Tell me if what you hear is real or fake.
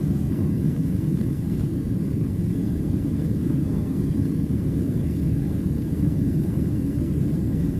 fake